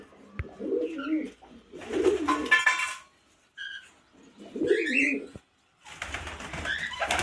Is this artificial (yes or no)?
yes